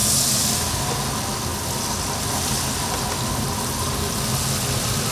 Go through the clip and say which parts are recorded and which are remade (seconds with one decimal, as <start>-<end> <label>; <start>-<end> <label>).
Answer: 0.0-5.1 recorded